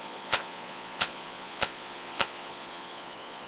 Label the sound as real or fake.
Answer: fake